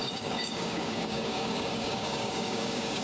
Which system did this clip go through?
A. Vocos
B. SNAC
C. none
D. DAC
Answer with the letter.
D